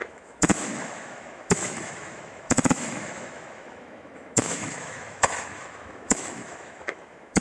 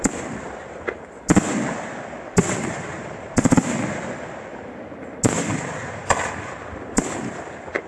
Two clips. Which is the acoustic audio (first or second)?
second